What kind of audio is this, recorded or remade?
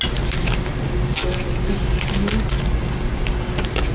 recorded